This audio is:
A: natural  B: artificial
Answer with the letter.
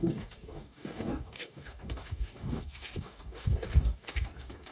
B